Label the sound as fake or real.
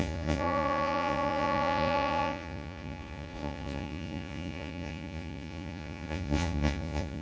fake